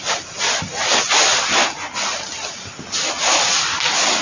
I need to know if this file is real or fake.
real